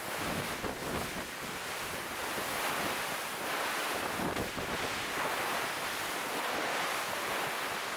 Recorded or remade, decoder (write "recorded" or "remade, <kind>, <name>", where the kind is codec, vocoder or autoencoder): recorded